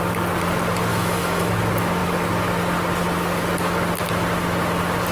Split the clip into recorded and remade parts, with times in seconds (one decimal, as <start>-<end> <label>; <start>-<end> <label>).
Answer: 0.0-0.9 recorded; 0.9-1.5 remade; 1.5-5.1 recorded